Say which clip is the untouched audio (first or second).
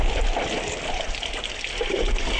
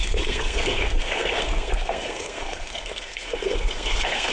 first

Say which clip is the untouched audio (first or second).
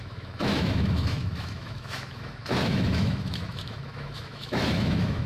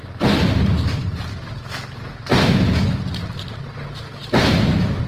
second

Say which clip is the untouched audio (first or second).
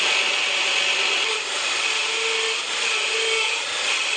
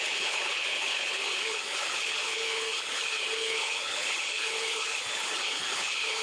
first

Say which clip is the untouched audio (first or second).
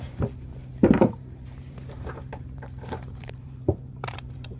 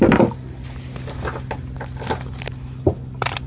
second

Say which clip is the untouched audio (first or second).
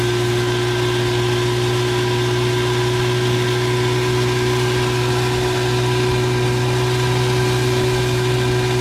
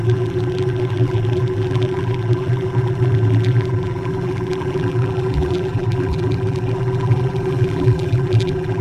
first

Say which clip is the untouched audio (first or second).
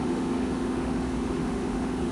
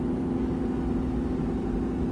second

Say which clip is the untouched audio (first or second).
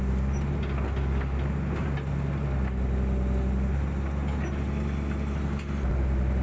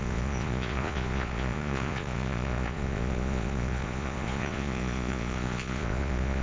first